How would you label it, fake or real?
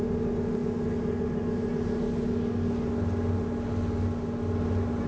real